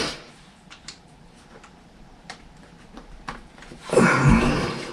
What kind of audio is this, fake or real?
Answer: fake